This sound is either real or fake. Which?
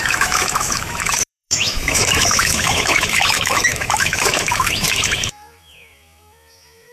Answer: fake